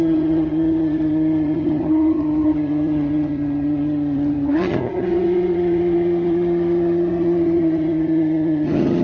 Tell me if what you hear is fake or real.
fake